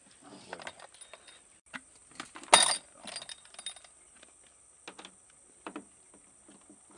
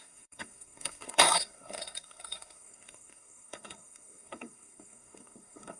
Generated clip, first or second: second